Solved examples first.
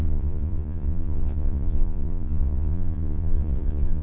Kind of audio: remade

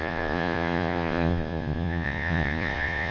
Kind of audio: remade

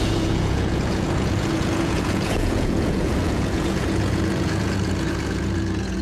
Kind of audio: remade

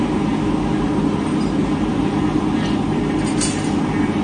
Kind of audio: recorded